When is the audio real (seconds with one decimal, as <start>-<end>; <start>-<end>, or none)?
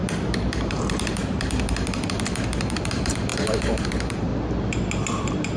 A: 0.0-0.7; 4.3-5.6